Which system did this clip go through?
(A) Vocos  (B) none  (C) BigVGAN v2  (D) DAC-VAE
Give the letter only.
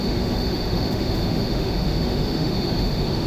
D